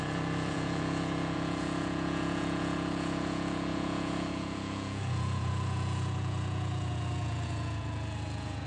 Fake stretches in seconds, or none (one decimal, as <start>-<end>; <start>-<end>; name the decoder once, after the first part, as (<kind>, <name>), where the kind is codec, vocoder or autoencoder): 0.0-8.7 (vocoder, Vocos)